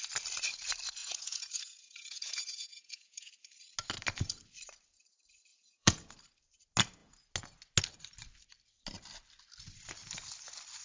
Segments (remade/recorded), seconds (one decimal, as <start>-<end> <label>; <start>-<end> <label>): 0.0-1.0 recorded; 1.0-3.3 remade; 3.3-5.5 recorded; 5.5-6.1 remade; 6.1-10.8 recorded